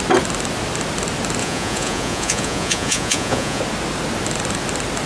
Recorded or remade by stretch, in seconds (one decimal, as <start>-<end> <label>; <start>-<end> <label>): 0.0-1.4 recorded; 1.4-3.6 remade; 3.6-5.1 recorded